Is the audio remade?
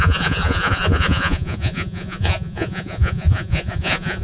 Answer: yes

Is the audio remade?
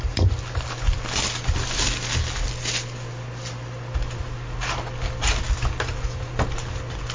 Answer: no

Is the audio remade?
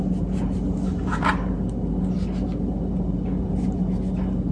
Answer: no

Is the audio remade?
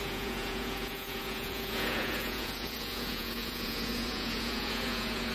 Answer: yes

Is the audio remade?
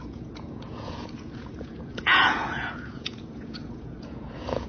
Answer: yes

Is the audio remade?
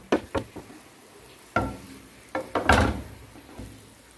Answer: no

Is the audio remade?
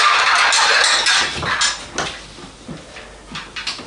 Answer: no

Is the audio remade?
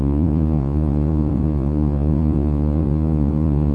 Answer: yes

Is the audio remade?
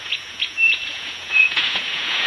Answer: yes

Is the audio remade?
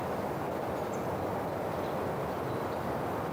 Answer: no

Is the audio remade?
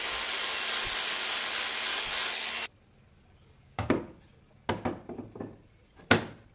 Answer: no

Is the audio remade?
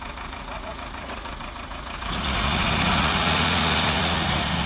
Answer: yes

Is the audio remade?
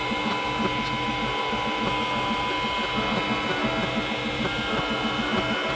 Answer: no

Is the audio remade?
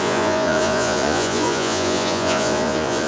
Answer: yes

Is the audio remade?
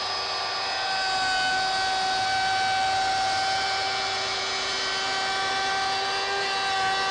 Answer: no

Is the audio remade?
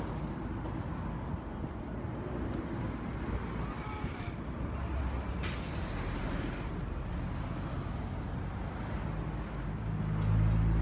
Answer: no